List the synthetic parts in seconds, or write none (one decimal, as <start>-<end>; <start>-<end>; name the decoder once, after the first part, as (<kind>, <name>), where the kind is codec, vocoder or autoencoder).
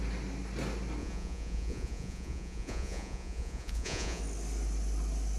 1.0-4.2 (vocoder, Vocos)